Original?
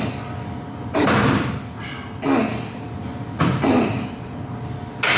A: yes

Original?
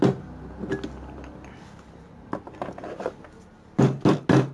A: yes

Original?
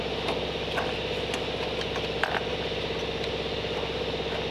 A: yes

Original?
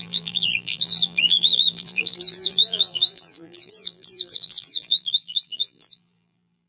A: no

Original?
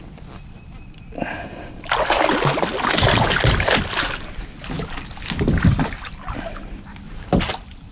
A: yes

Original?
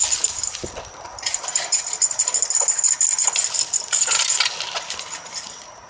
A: yes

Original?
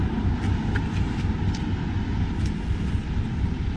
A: yes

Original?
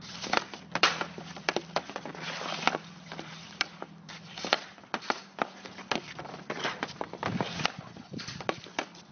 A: no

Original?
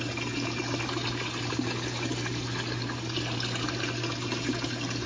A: yes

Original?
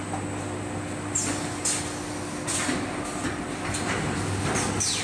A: yes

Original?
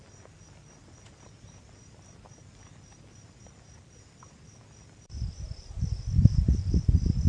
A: no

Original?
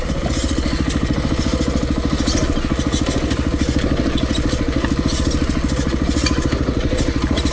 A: yes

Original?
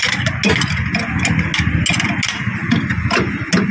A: yes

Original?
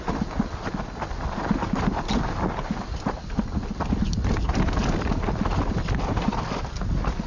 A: yes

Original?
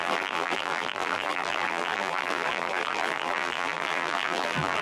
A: no